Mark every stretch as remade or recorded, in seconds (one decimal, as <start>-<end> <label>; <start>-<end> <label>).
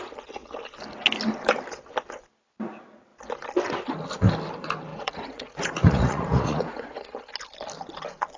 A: 0.0-4.9 recorded; 4.9-7.0 remade; 7.0-8.4 recorded